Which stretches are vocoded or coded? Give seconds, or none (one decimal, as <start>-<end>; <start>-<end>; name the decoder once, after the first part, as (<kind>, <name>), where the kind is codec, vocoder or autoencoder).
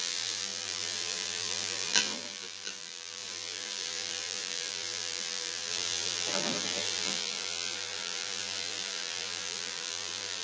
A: 0.0-10.4 (vocoder, BigVGAN v2)